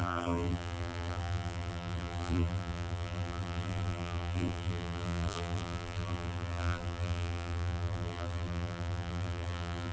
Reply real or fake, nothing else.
fake